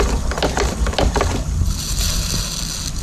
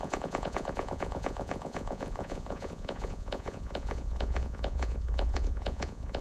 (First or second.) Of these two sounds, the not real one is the second